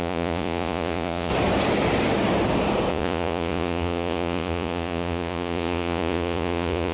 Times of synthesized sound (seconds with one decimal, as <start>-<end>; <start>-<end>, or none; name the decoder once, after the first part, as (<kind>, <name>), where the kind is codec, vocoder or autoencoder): 0.0-1.3 (vocoder, Vocos); 2.9-6.9